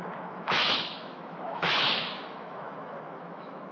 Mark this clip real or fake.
fake